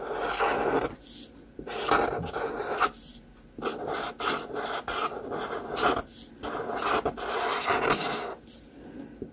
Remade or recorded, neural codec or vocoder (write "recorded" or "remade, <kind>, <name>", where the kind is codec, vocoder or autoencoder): recorded